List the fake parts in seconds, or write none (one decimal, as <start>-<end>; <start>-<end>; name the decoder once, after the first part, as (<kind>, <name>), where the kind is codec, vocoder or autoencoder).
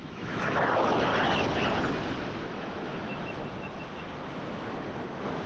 0.0-1.1 (autoencoder, DAC-VAE); 2.4-3.4; 4.3-5.5